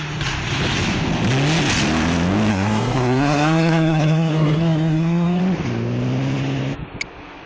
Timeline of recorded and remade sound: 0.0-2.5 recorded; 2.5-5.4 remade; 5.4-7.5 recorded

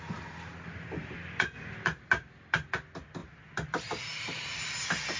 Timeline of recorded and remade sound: 0.0-5.2 recorded

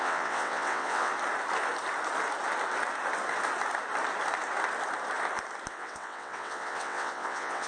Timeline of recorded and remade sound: 0.0-1.1 remade; 1.1-5.7 recorded; 5.7-7.7 remade

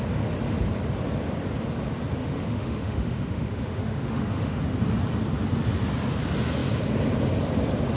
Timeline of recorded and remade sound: 0.0-2.2 recorded; 2.2-4.6 remade; 4.6-8.0 recorded

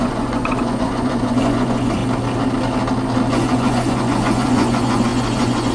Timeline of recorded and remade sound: 0.0-2.0 remade; 2.0-3.3 recorded; 3.3-5.7 remade

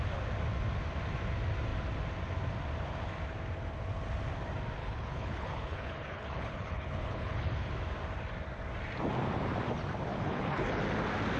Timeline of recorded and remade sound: 0.0-4.8 recorded; 4.8-7.7 remade; 7.7-10.1 recorded; 10.1-10.8 remade; 10.8-11.4 recorded